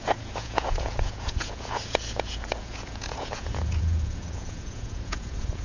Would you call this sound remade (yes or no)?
yes